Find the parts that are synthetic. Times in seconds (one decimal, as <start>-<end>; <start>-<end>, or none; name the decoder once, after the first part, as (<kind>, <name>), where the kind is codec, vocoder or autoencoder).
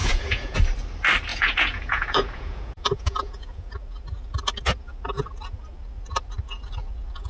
0.0-0.6 (vocoder, Vocos); 1.3-3.7